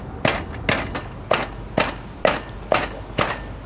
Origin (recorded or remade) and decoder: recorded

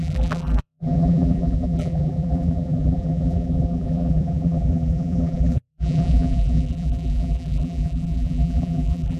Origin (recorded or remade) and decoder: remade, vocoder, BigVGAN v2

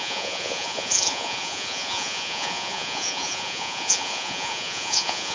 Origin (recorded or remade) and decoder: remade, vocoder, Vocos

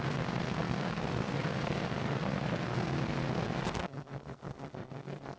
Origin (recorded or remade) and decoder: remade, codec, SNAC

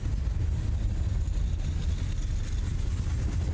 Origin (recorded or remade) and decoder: recorded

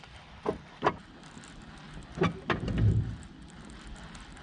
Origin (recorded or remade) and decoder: recorded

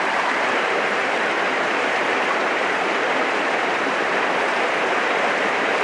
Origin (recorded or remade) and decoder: remade, vocoder, BigVGAN v2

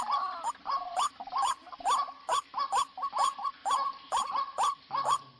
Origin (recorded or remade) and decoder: recorded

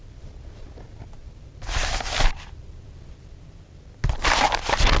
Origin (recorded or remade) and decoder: recorded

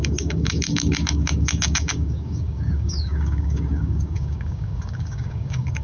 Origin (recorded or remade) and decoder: remade, codec, DAC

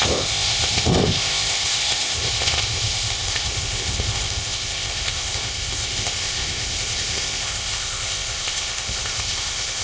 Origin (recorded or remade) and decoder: remade, codec, ZipCodec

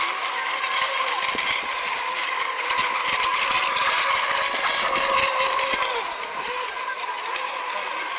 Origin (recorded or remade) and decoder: recorded